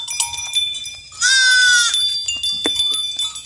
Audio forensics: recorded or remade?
recorded